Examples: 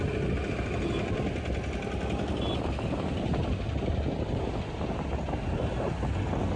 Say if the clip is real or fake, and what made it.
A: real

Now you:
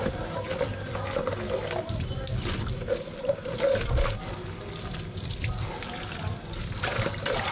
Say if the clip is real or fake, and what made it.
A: real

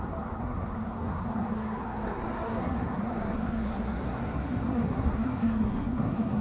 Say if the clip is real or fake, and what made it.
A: fake, codec, SNAC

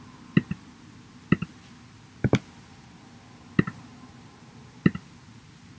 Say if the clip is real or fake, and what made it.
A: real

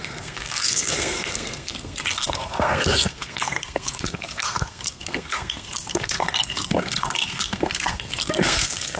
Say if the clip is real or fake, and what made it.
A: fake, codec, SNAC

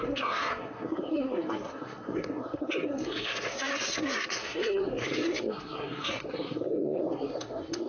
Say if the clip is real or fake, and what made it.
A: fake, codec, SNAC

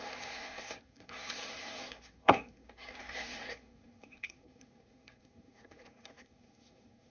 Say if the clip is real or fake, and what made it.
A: fake, codec, SNAC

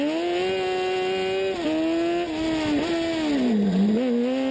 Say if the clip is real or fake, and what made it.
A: real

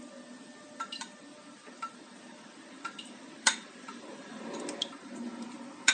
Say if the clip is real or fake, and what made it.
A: real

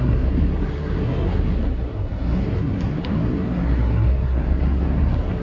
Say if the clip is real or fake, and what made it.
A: fake, codec, SNAC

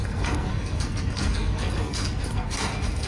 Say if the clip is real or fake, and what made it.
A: fake, codec, SNAC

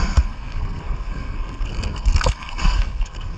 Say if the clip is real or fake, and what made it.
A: fake, codec, SNAC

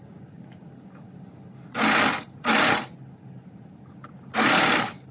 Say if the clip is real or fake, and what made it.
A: real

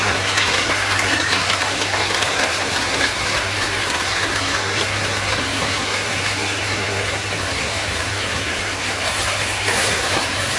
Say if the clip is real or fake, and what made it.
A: fake, codec, SNAC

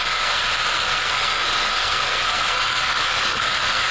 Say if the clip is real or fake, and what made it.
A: fake, codec, SNAC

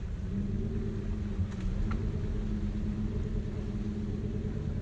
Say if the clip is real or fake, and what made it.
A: real